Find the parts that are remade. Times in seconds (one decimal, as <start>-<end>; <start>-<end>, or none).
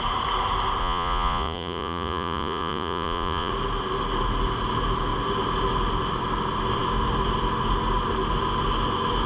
0.8-3.5